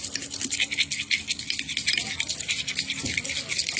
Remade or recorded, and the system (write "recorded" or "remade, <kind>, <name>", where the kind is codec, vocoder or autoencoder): recorded